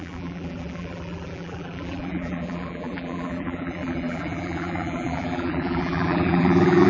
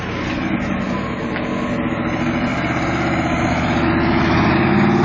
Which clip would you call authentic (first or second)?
second